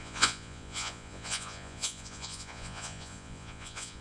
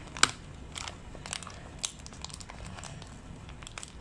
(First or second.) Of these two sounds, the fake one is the first